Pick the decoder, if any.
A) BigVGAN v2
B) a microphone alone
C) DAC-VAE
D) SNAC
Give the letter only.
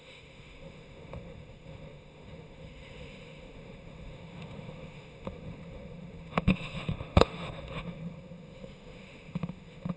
C